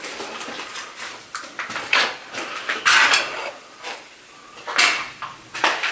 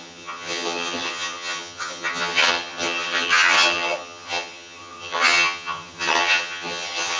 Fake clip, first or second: second